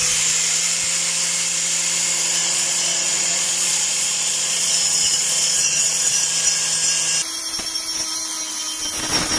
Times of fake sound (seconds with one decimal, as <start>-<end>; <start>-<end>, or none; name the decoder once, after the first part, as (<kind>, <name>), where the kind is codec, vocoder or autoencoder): 2.4-6.2 (vocoder, Vocos)